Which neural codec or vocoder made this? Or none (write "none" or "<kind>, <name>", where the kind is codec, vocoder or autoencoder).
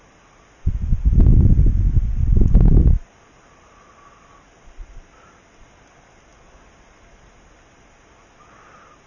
none